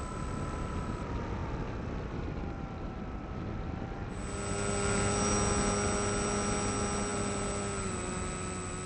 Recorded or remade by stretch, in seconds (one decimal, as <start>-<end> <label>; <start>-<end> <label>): 0.0-8.9 recorded

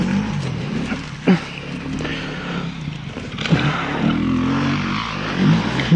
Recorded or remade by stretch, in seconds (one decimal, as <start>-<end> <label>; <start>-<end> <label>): 0.0-2.1 recorded; 2.1-3.4 remade; 3.4-6.0 recorded

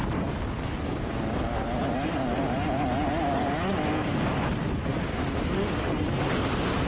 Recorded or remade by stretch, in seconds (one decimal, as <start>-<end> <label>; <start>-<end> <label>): 0.0-4.9 recorded; 4.9-6.9 remade

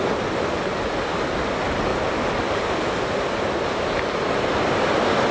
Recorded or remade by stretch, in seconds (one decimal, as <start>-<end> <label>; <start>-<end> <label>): 0.0-5.3 recorded